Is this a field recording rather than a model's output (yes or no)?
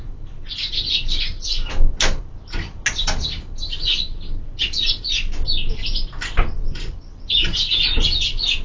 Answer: yes